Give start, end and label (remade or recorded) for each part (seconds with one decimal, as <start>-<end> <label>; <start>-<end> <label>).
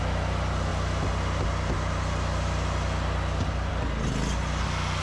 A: 0.0-5.0 recorded